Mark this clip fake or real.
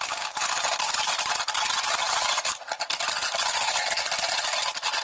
real